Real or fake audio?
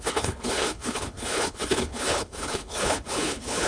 fake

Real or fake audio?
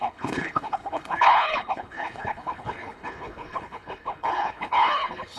fake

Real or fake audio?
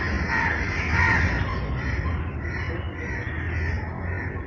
real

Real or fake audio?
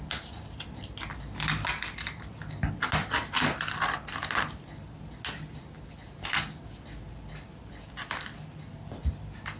real